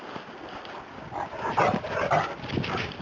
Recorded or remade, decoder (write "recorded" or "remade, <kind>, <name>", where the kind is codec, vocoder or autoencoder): recorded